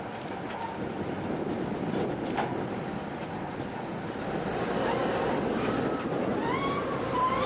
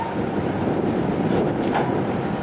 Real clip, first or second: second